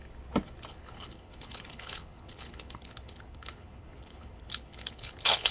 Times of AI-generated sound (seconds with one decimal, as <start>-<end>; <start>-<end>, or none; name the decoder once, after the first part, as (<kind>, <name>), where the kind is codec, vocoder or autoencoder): 0.7-5.5 (codec, HILCodec)